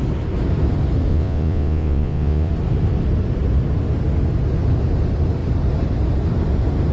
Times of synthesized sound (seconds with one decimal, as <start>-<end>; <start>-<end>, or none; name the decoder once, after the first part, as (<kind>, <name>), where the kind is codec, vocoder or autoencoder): 1.1-2.5 (vocoder, Vocos)